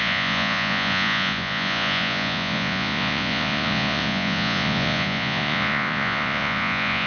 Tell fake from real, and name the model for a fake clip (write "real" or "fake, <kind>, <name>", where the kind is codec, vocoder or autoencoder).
fake, vocoder, Vocos